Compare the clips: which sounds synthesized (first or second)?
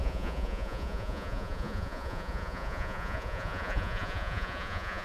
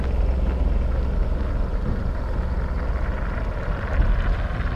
first